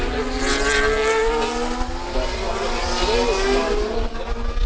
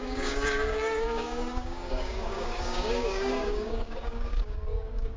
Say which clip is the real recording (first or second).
first